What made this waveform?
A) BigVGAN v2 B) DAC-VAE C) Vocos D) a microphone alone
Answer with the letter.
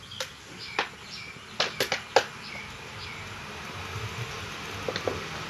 D